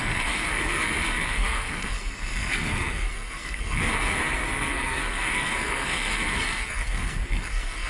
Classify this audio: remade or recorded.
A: remade